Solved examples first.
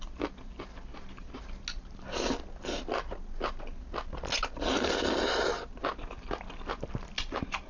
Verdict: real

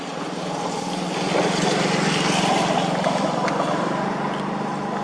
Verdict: real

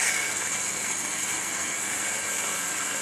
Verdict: fake